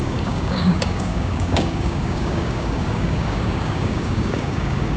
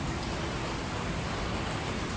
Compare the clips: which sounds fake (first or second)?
first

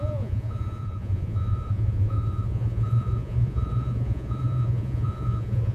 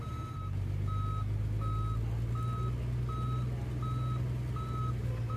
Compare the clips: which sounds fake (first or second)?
first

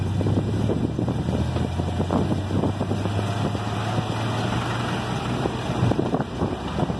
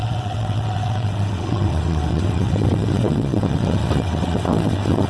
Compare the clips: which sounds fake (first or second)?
second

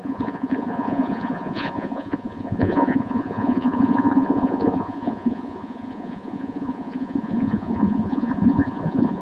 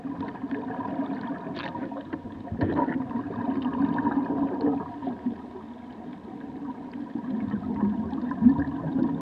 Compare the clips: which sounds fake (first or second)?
first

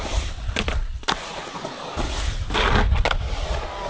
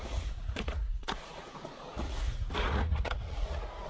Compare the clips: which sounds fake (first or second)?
second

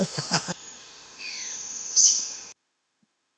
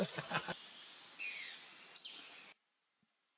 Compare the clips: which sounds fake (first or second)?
first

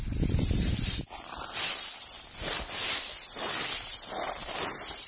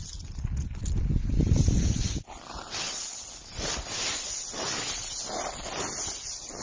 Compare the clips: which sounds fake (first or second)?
first